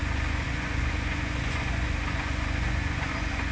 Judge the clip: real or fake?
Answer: fake